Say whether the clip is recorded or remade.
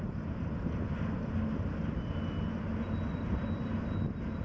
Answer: recorded